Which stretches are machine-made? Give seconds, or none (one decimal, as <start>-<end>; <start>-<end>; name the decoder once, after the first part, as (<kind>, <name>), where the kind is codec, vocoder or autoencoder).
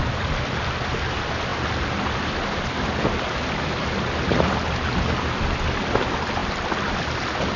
none